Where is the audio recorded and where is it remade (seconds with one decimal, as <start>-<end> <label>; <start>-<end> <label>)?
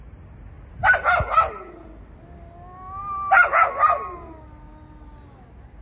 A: 0.0-5.8 recorded